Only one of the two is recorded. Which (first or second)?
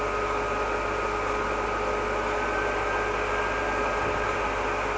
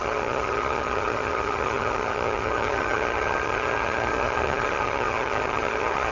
first